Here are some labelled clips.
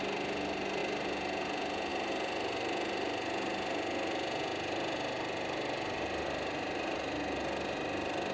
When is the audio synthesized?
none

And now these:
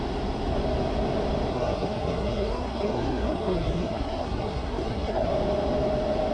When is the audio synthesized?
1.5-5.3 (codec, SNAC)

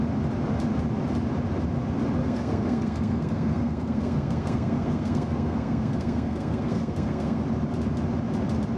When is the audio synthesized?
2.2-7.4 (codec, SNAC)

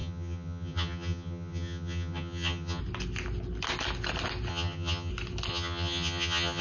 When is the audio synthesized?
0.0-2.8 (vocoder, HiFi-GAN); 4.5-5.1; 5.5-6.6

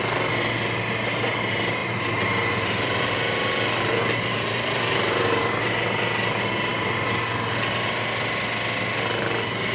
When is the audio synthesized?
1.8-5.4 (vocoder, BigVGAN v2)

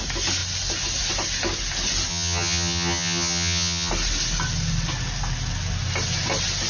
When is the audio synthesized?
2.1-3.9 (vocoder, HiFi-GAN)